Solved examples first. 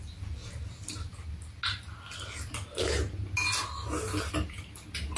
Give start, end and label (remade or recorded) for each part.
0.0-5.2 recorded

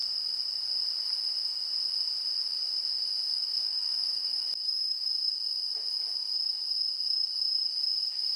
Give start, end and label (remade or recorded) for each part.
0.0-3.3 recorded; 3.3-5.1 remade; 5.1-8.4 recorded

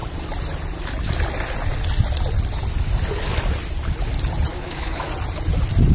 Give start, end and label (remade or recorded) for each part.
0.0-4.5 recorded; 4.5-5.1 remade; 5.1-5.9 recorded

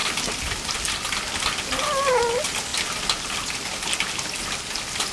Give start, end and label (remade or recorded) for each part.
0.0-5.1 recorded

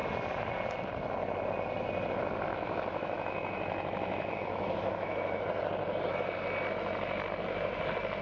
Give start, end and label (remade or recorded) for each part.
0.0-2.5 recorded; 2.5-5.4 remade; 5.4-8.2 recorded

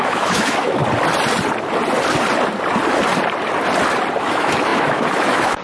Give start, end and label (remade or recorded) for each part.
0.0-0.8 remade; 0.8-4.2 recorded; 4.2-5.6 remade